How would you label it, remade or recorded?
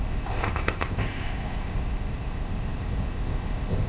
remade